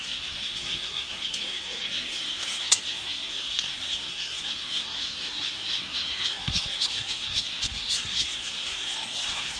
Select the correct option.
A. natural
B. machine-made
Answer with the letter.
B